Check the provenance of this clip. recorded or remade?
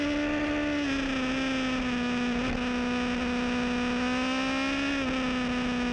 recorded